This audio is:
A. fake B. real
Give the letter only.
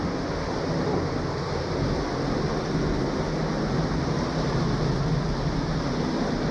B